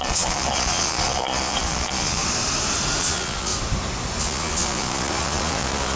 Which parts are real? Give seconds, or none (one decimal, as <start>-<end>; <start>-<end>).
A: 2.2-3.0; 3.5-4.2